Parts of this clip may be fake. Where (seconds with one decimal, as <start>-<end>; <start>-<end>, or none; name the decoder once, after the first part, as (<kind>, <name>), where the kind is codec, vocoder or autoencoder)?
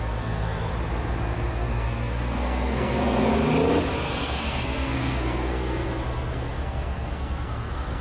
0.0-0.7 (codec, SNAC); 1.5-3.3; 4.0-8.0